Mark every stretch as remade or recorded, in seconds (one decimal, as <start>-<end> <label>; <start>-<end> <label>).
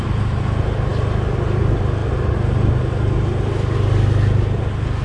0.0-5.0 recorded